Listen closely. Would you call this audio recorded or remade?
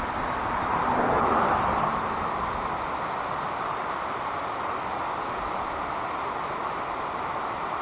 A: recorded